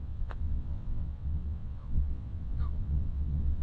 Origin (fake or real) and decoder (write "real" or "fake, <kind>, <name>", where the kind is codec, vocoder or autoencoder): fake, vocoder, WaveNeXt